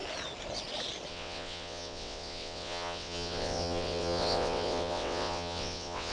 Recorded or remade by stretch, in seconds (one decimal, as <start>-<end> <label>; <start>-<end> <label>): 0.0-1.1 recorded; 1.1-6.1 remade